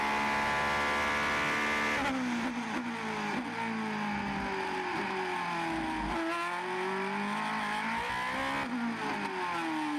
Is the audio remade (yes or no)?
no